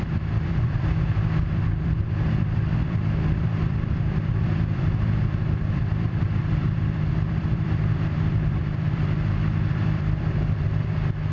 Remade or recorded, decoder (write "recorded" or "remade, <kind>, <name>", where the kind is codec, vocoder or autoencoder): remade, vocoder, BigVGAN v2